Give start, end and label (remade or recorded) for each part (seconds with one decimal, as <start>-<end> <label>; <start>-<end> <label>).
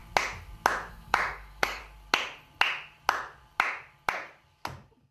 0.0-0.9 recorded; 0.9-1.8 remade; 1.8-5.1 recorded